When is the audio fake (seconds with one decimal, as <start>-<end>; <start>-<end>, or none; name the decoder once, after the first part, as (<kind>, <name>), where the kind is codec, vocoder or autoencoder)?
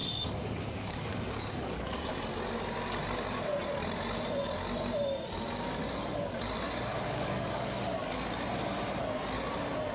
0.0-2.0 (codec, DAC); 6.9-8.0